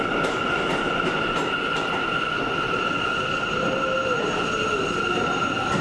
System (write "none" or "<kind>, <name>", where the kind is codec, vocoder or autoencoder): none